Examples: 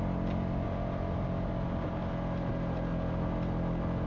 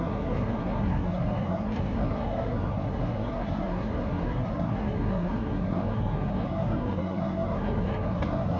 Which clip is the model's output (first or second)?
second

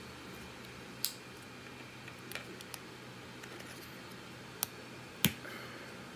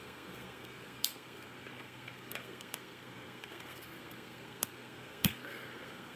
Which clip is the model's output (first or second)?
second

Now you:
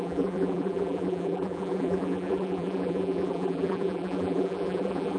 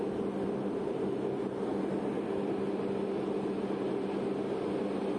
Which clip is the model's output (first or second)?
first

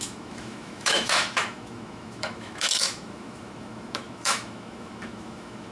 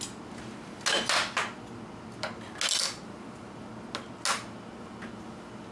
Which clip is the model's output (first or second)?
first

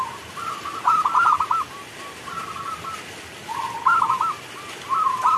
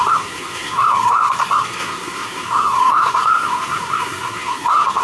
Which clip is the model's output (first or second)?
second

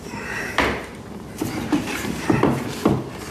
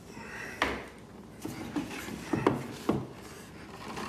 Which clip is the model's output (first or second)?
first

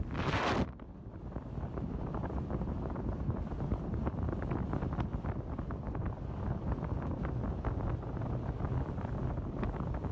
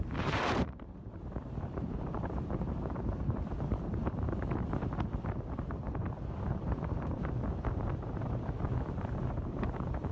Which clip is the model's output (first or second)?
second